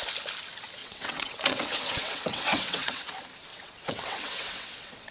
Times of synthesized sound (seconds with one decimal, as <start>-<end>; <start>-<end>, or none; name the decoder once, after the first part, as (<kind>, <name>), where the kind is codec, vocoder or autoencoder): 0.8-3.1 (vocoder, WaveNeXt); 3.5-5.1